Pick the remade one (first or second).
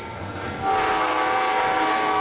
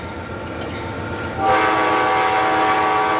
first